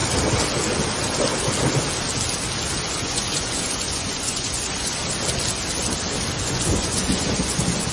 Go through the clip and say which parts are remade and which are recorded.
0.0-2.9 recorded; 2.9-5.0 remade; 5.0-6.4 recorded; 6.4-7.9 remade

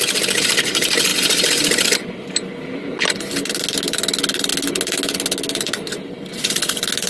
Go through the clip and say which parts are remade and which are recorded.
0.0-7.1 recorded

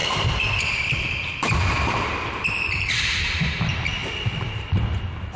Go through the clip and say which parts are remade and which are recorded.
0.0-3.2 remade; 3.2-4.0 recorded; 4.0-5.0 remade; 5.0-5.4 recorded

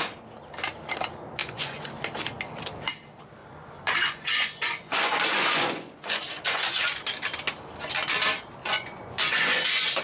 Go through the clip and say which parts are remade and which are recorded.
0.0-1.4 recorded; 1.4-1.9 remade; 1.9-3.4 recorded; 3.4-7.0 remade; 7.0-8.6 recorded; 8.6-10.0 remade

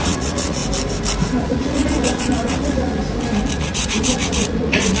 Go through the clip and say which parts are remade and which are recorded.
0.0-0.6 remade; 0.6-1.4 recorded; 1.4-3.0 remade; 3.0-3.5 recorded; 3.5-5.0 remade

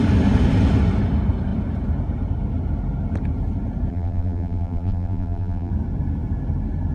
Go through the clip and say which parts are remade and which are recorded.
0.0-3.9 recorded; 3.9-5.7 remade; 5.7-6.9 recorded

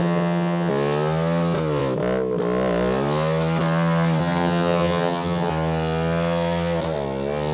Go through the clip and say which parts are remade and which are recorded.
0.0-0.7 remade; 0.7-4.2 recorded; 4.2-5.5 remade; 5.5-7.5 recorded